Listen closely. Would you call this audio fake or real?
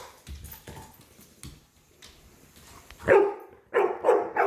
real